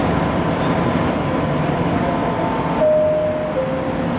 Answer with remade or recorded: recorded